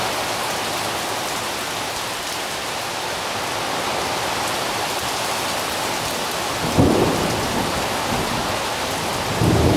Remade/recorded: recorded